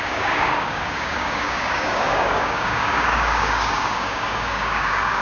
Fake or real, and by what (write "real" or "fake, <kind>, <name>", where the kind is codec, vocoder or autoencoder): fake, codec, DAC